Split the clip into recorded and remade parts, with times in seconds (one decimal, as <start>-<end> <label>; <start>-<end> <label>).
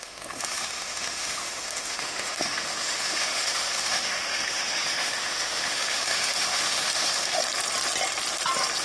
0.0-7.4 remade; 7.4-8.8 recorded